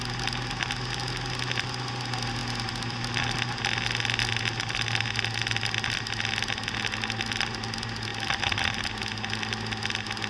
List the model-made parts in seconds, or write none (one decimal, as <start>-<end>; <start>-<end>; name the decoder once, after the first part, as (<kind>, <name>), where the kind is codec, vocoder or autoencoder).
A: none